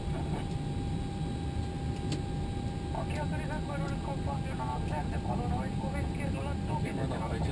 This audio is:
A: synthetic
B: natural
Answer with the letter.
B